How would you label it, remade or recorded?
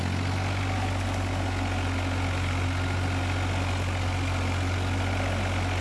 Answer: recorded